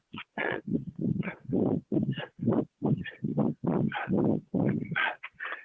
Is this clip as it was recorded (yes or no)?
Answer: no